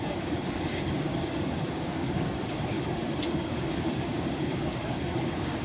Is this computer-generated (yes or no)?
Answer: yes